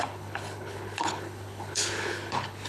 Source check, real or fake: fake